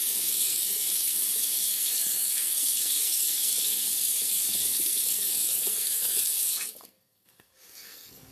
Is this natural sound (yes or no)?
no